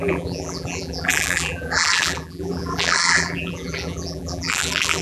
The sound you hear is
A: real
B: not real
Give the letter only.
B